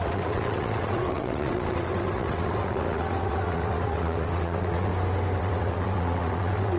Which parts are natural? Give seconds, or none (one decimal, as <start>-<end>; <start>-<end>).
4.9-5.4